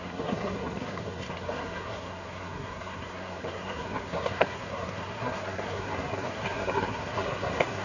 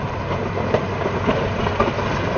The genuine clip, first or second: second